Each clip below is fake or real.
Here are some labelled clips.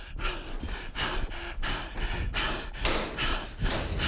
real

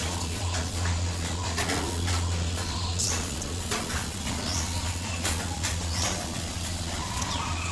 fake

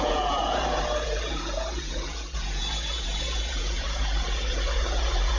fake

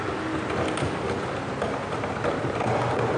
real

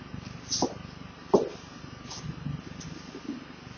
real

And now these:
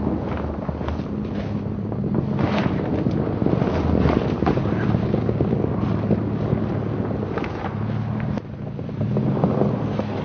real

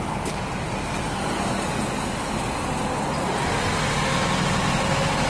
real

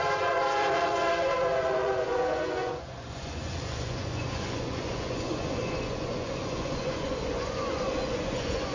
fake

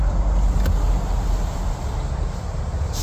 real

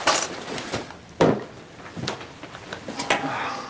real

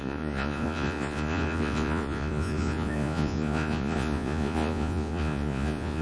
fake